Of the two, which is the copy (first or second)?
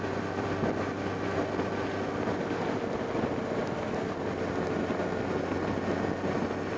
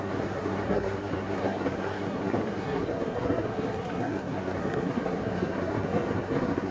second